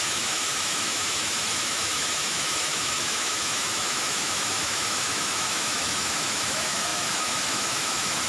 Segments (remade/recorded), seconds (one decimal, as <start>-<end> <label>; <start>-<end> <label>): 0.0-8.3 remade